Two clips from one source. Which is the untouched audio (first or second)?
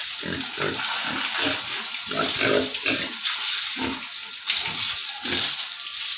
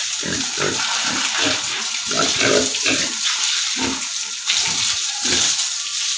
first